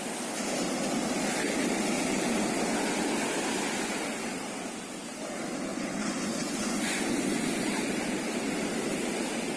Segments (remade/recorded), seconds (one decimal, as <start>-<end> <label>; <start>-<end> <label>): 0.0-5.7 recorded; 5.7-7.9 remade; 7.9-9.6 recorded